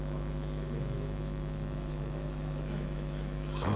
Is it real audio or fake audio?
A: fake